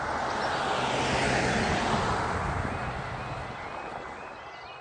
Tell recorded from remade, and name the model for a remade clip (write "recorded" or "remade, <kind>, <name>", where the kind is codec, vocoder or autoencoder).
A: recorded